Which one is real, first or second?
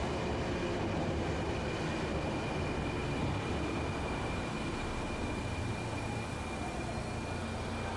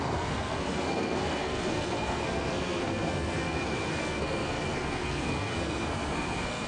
first